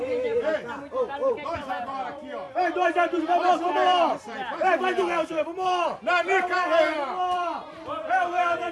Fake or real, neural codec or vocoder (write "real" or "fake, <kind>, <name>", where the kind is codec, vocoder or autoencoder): fake, vocoder, BigVGAN v2